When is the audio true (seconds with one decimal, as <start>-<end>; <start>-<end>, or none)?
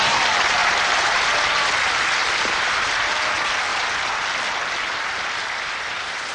0.0-0.6; 1.2-2.2; 3.2-6.3